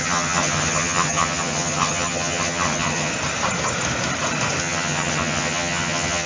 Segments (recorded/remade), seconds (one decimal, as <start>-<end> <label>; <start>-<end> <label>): 0.0-3.1 remade; 3.1-4.6 recorded; 4.6-6.3 remade